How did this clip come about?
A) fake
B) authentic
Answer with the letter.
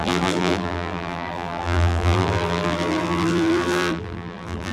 A